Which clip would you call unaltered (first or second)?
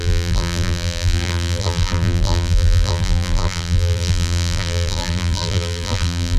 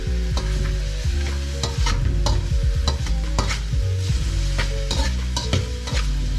second